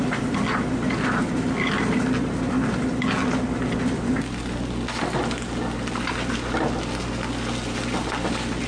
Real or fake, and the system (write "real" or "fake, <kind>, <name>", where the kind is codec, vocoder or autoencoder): real